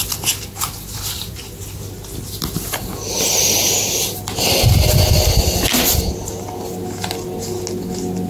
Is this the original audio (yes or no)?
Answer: yes